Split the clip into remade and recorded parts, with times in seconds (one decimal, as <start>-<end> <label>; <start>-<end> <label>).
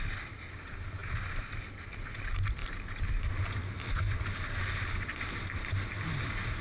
0.0-6.6 recorded